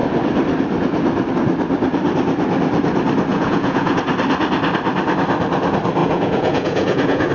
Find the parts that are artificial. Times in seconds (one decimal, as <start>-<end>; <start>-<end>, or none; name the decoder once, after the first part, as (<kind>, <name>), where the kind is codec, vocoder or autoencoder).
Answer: 3.3-4.0 (vocoder, Vocos); 6.0-7.3